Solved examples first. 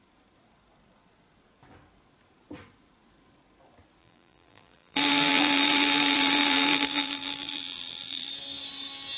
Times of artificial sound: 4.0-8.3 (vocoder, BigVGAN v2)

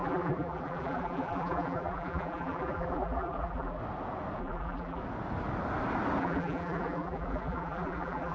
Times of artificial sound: 0.0-3.8 (vocoder, BigVGAN v2); 4.4-5.0; 6.2-8.3

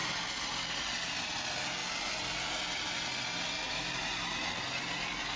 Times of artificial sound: 0.0-1.2 (vocoder, BigVGAN v2)

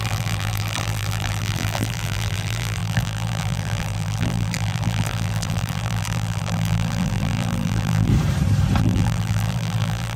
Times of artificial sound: 0.0-8.1 (vocoder, BigVGAN v2); 8.8-10.2

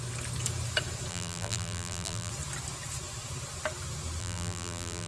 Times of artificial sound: 1.1-2.3 (vocoder, BigVGAN v2); 4.2-5.1

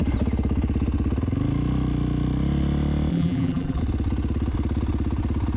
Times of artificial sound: 3.1-3.8 (vocoder, BigVGAN v2)

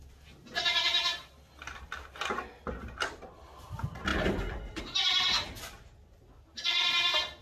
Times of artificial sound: none